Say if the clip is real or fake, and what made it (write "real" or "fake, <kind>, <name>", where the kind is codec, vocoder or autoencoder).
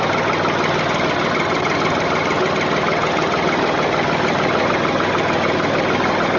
real